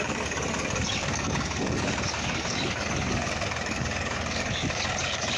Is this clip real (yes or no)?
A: no